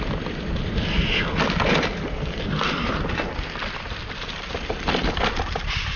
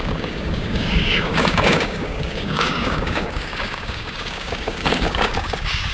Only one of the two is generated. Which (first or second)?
second